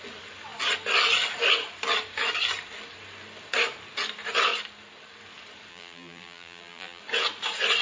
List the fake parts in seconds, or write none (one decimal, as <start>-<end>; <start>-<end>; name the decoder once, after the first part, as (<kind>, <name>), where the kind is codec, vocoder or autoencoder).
5.7-7.0 (vocoder, BigVGAN v2)